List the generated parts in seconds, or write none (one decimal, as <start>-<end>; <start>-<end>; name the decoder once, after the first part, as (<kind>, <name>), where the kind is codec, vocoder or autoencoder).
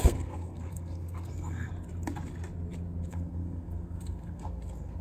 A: 0.0-1.7 (codec, SNAC); 3.1-5.0